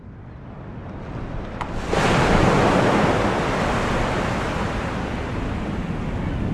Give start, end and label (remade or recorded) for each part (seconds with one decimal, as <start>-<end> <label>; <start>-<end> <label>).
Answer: 0.0-6.5 recorded